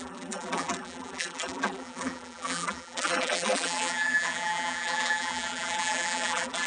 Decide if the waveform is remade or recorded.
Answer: remade